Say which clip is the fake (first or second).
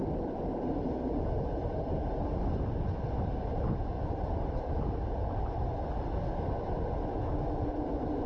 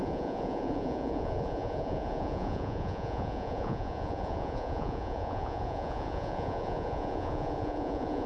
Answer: second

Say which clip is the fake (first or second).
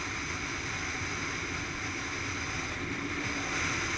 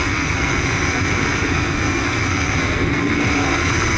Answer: second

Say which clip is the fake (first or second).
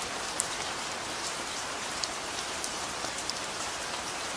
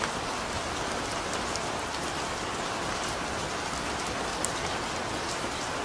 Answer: first